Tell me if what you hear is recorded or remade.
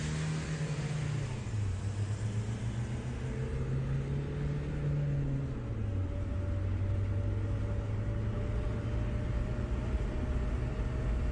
recorded